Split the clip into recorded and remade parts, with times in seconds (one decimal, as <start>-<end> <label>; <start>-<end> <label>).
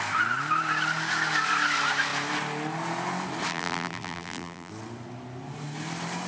0.0-3.5 recorded; 3.5-4.7 remade; 4.7-6.3 recorded